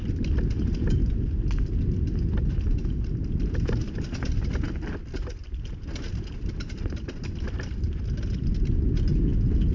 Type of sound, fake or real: real